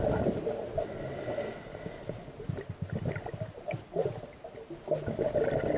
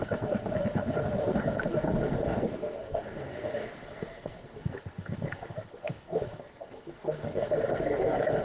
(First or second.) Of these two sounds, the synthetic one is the second